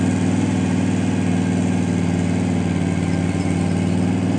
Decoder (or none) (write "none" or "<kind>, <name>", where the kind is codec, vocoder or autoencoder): none